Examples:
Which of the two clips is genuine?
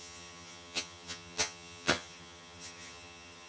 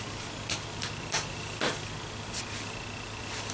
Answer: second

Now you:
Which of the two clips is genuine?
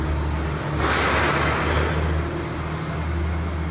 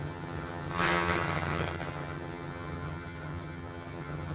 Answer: first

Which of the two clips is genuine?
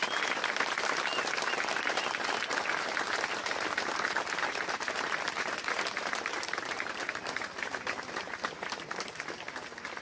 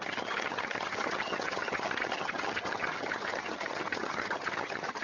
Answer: first